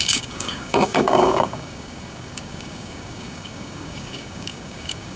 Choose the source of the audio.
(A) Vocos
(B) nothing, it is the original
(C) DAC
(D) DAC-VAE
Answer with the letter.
C